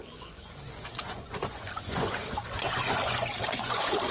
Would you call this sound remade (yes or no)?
yes